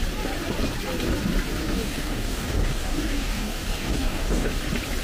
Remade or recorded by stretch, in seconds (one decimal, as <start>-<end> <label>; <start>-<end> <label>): 0.0-1.6 recorded; 1.6-4.6 remade; 4.6-5.0 recorded